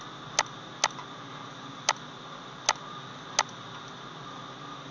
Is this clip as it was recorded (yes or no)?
yes